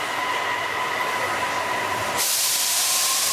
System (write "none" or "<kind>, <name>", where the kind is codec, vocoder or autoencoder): none